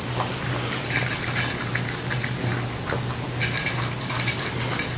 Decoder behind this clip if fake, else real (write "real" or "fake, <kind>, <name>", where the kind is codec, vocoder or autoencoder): real